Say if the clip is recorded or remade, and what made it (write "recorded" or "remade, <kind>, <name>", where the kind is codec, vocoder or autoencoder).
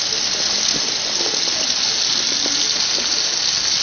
recorded